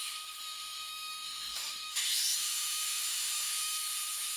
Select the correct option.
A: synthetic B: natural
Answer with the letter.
A